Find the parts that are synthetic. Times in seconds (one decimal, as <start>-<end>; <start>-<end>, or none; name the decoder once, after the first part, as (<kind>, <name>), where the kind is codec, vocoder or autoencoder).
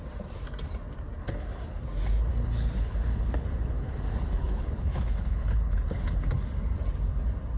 1.2-1.8 (codec, HILCodec); 2.3-6.3